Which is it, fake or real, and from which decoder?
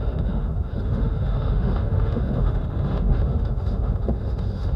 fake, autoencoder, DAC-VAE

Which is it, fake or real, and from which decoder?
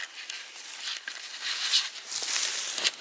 real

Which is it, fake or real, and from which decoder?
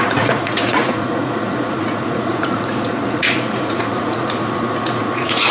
fake, vocoder, Vocos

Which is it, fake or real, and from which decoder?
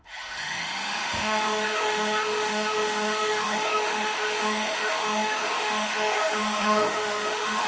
fake, autoencoder, DAC-VAE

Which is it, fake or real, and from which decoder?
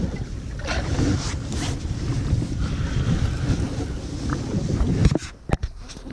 real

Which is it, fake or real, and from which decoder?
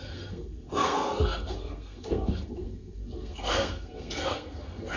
fake, codec, SNAC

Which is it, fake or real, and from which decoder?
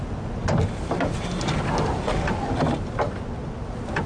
real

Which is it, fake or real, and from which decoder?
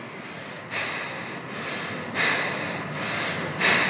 real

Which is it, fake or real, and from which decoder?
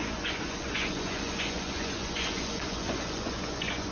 fake, vocoder, Vocos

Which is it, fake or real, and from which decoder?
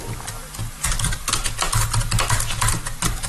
real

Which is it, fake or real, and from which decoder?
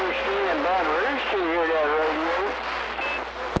real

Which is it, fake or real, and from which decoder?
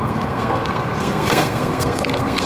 fake, codec, SNAC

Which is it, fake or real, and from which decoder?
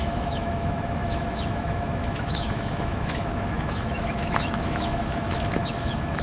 fake, autoencoder, DAC-VAE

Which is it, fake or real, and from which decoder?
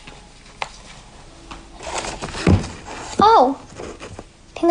real